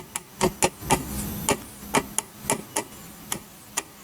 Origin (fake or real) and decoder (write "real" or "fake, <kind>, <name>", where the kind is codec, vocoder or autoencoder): real